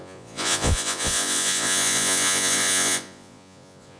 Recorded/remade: remade